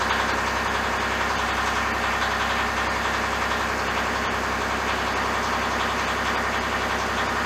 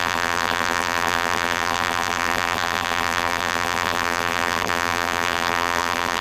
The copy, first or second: second